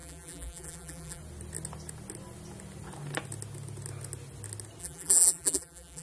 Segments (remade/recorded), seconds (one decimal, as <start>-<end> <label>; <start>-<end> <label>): 0.0-1.2 remade; 1.2-4.8 recorded; 4.8-6.0 remade

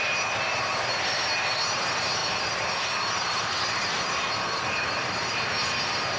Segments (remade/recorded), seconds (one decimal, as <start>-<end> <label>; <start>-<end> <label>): 0.0-2.2 recorded; 2.2-5.5 remade; 5.5-6.2 recorded

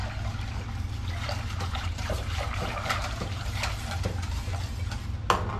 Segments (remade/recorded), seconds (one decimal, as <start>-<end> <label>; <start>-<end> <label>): 0.0-1.4 recorded; 1.4-4.5 remade; 4.5-5.6 recorded

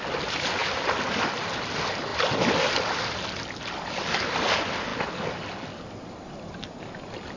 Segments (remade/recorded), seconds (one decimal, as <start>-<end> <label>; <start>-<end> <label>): 0.0-7.4 recorded

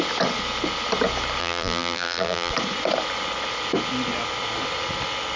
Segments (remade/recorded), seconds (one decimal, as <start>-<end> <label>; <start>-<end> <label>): 0.0-1.4 recorded; 1.4-2.5 remade; 2.5-5.4 recorded

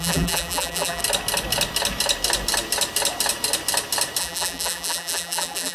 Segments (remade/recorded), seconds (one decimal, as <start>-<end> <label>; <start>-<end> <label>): 0.0-1.0 remade; 1.0-4.2 recorded; 4.2-5.7 remade

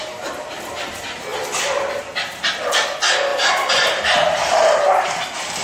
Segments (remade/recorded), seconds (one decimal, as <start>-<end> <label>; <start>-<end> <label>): 0.0-3.3 recorded; 3.3-5.0 remade; 5.0-5.6 recorded

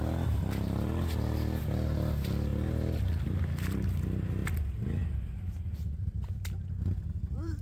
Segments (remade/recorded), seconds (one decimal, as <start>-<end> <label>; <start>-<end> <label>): 0.0-7.6 recorded